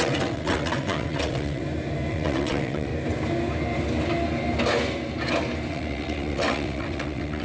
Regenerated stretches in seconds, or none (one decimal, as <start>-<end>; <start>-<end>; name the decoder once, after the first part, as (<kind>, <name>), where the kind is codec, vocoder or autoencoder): 0.0-1.6 (vocoder, WaveNeXt); 2.1-2.9; 5.7-7.4